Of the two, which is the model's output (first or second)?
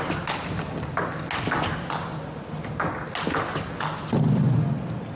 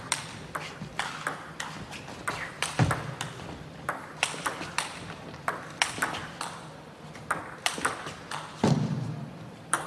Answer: second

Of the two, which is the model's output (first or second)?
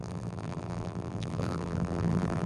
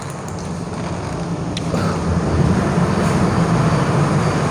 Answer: first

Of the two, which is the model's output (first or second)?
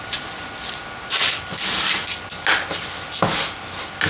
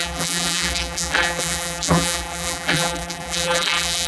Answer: second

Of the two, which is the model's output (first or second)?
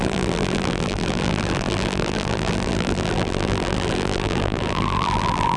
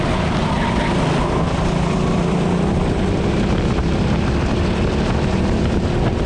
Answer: first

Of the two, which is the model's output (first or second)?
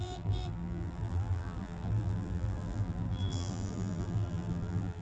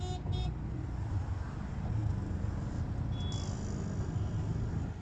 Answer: first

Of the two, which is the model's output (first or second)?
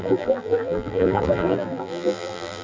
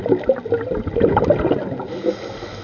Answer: first